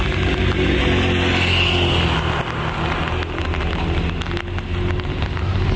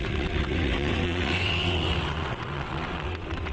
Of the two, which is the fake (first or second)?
second